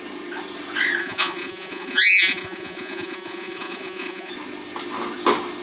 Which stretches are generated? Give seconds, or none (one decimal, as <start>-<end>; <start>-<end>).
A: 1.0-4.3